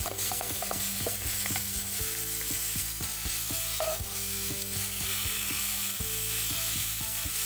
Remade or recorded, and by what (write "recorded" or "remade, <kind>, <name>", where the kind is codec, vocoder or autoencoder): remade, codec, SNAC